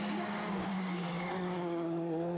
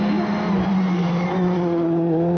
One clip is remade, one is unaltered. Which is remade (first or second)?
first